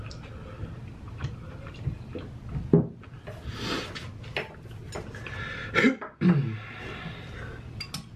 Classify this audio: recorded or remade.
recorded